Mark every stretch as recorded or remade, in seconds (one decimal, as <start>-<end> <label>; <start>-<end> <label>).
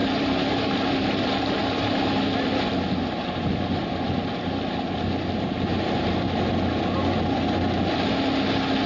0.0-1.4 remade; 1.4-8.9 recorded